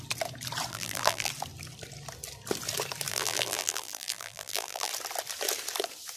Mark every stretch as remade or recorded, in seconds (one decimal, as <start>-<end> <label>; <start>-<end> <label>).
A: 0.0-0.7 recorded; 0.7-1.3 remade; 1.3-3.1 recorded; 3.1-4.9 remade; 4.9-6.2 recorded